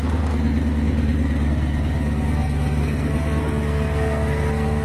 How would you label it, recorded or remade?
remade